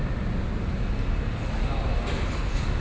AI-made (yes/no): no